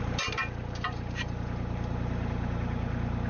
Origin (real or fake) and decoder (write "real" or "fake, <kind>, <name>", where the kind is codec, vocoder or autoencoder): fake, vocoder, BigVGAN v2